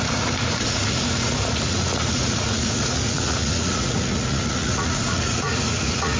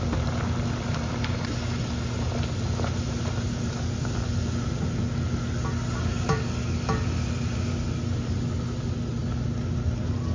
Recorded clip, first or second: second